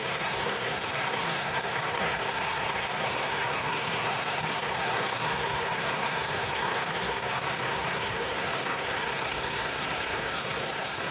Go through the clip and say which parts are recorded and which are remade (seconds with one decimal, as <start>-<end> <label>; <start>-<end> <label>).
0.0-11.1 remade